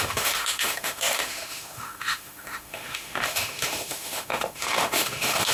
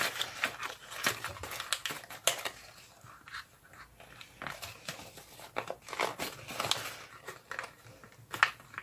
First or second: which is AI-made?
first